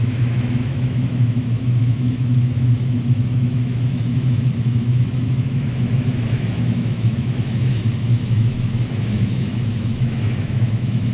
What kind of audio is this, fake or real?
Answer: fake